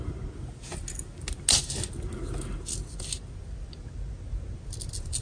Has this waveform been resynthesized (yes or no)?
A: no